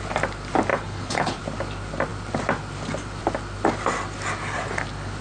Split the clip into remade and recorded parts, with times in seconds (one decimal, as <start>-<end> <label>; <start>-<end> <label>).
0.0-0.7 recorded; 0.7-1.4 remade; 1.4-5.2 recorded